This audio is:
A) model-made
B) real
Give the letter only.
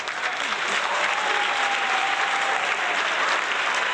B